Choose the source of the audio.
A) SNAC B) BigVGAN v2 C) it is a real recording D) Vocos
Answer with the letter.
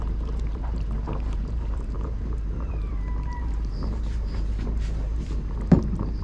B